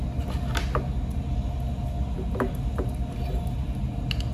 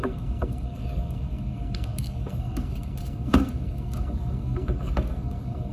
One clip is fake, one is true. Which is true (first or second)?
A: first